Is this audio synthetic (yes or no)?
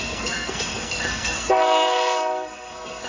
yes